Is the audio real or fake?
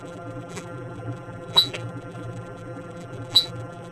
fake